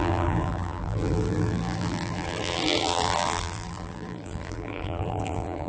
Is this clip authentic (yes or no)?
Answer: no